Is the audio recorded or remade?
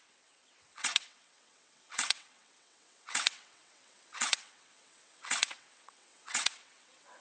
remade